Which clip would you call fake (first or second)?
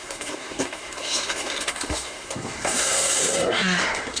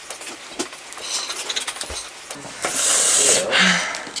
first